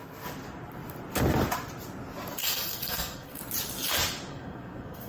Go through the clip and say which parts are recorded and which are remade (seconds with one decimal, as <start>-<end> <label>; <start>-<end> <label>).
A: 0.0-2.4 recorded; 2.4-3.4 remade; 3.4-4.3 recorded; 4.3-5.1 remade